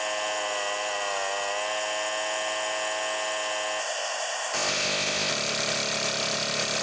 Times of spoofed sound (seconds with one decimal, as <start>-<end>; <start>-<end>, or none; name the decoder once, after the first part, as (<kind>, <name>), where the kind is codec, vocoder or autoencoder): 3.8-5.3 (codec, ZipCodec)